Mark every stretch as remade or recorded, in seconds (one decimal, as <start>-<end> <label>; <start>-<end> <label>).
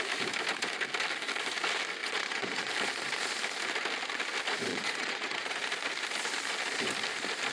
0.0-2.0 recorded; 2.0-2.7 remade; 2.7-4.7 recorded; 4.7-5.6 remade; 5.6-7.5 recorded